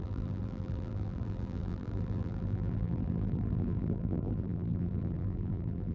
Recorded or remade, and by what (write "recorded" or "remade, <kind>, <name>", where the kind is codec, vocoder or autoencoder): remade, vocoder, BigVGAN v2